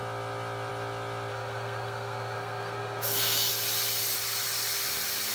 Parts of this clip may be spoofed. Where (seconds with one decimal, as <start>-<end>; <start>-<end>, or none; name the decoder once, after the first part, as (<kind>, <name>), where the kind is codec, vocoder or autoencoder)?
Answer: 1.3-3.5 (codec, SNAC)